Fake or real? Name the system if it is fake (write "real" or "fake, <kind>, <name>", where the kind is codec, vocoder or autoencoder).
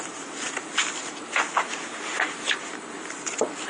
real